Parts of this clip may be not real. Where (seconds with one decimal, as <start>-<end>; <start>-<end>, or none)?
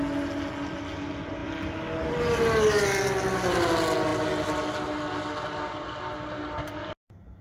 none